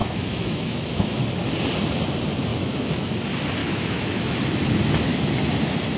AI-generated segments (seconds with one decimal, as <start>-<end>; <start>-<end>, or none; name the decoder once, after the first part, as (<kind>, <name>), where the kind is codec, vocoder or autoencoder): 0.0-1.2 (autoencoder, DAC-VAE); 2.5-3.1; 3.6-4.3